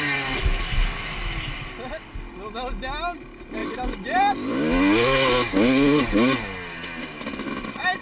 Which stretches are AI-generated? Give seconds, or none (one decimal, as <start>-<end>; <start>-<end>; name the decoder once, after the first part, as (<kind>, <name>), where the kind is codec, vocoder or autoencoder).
none